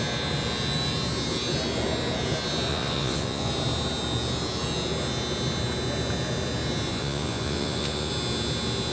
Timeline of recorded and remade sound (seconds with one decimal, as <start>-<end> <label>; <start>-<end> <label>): 0.0-2.7 recorded; 2.7-3.5 remade; 3.5-6.9 recorded; 6.9-8.1 remade; 8.1-8.9 recorded